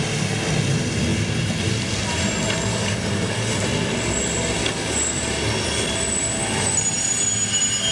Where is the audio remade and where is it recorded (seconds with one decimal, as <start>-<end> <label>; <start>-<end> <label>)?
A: 0.0-2.7 recorded; 2.7-3.5 remade; 3.5-4.6 recorded; 4.6-5.2 remade; 5.2-7.9 recorded